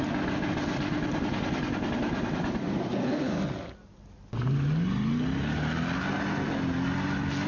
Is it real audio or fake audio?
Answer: real